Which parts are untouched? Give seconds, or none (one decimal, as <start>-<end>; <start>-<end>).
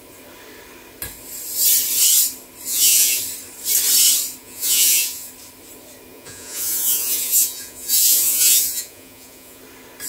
0.0-2.7; 3.2-4.4; 5.3-6.1; 9.6-10.1